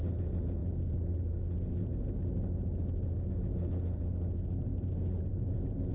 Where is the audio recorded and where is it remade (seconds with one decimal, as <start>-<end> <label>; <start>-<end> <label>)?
0.0-4.7 recorded; 4.7-5.5 remade; 5.5-5.9 recorded